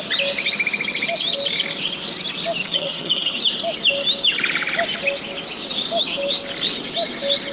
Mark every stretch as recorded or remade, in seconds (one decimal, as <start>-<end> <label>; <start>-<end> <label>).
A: 0.0-2.6 recorded; 2.6-3.4 remade; 3.4-7.5 recorded